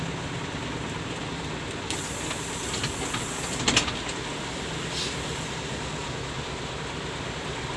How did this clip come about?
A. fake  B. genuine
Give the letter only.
B